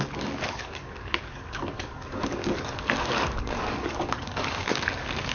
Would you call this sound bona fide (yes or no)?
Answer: no